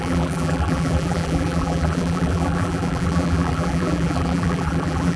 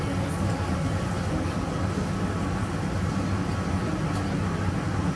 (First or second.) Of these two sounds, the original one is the second